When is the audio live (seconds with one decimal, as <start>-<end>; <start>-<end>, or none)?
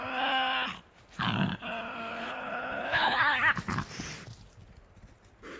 0.0-2.1; 3.2-5.6